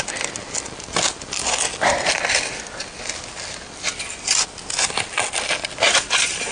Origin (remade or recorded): recorded